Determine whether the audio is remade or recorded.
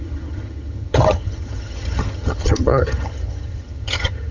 remade